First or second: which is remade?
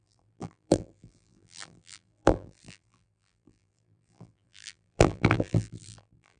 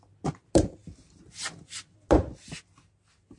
first